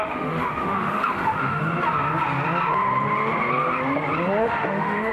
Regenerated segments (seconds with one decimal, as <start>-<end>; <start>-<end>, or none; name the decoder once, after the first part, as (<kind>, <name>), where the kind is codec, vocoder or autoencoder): 0.0-1.6 (autoencoder, DAC-VAE); 4.4-5.1